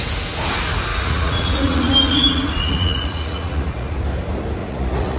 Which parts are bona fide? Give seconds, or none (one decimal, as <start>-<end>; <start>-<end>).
0.0-0.9; 4.0-4.6